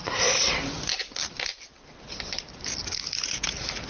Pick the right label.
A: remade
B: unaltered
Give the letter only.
B